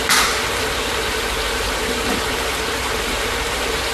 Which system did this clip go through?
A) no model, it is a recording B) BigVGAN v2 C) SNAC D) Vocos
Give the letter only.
A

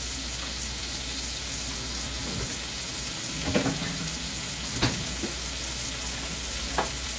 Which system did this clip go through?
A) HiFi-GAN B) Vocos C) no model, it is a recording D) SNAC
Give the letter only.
C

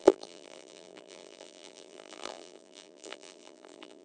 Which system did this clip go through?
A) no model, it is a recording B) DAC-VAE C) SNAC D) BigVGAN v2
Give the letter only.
D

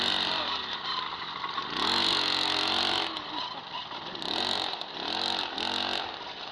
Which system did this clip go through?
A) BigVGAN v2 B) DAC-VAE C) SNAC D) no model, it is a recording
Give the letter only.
D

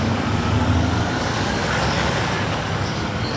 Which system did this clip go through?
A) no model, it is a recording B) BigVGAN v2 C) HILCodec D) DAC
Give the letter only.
D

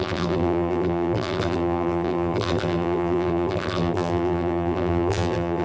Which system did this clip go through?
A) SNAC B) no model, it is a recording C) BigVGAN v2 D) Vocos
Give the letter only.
C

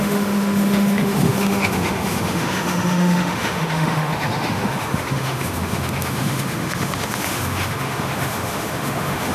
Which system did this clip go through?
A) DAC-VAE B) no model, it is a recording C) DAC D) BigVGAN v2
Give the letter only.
A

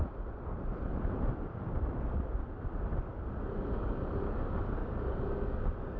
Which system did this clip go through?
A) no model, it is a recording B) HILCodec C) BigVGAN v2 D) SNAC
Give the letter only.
C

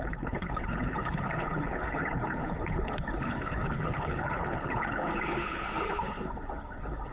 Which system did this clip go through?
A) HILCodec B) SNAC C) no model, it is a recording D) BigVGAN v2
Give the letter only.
A